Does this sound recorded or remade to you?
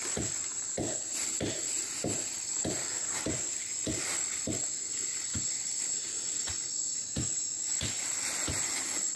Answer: recorded